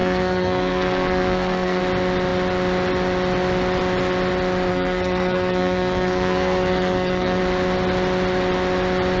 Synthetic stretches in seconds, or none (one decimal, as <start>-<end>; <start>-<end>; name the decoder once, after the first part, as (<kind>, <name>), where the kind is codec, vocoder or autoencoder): 0.0-1.8 (codec, SNAC); 4.7-7.4